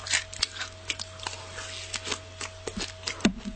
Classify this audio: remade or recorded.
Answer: recorded